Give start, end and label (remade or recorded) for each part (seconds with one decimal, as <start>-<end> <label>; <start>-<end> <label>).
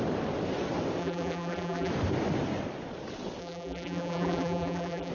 0.0-1.0 recorded; 1.0-1.9 remade; 1.9-3.4 recorded; 3.4-5.1 remade